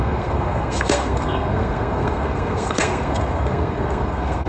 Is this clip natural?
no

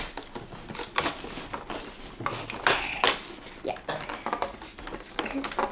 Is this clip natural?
yes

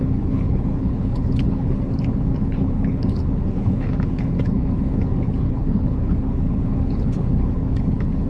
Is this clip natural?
no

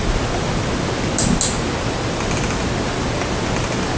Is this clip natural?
yes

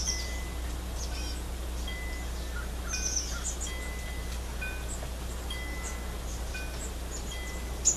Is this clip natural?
yes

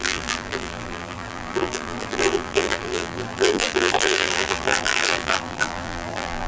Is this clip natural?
no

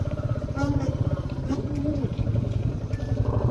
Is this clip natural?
no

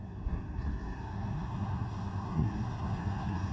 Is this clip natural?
no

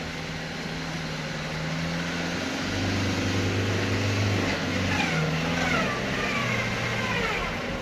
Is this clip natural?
yes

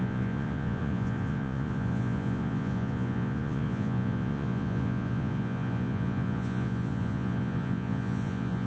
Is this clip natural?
no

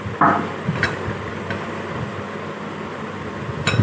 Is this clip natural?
yes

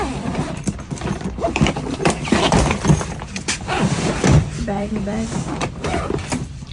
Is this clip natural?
no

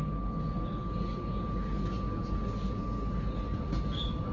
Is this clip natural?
yes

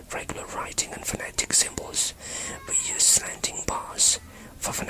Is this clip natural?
yes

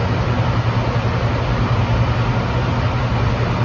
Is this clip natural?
yes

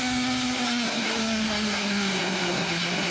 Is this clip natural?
no